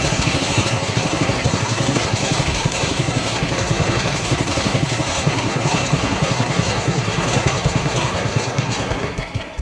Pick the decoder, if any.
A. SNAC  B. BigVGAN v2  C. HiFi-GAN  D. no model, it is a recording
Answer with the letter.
A